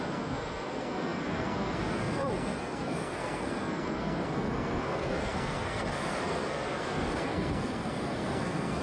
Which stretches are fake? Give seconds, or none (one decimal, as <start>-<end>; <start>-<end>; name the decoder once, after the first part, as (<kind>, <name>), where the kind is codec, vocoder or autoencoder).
0.0-8.8 (codec, SNAC)